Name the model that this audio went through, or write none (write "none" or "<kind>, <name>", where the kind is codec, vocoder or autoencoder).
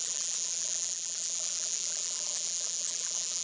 vocoder, BigVGAN v2